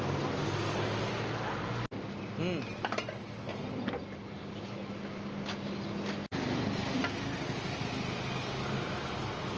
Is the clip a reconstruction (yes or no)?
no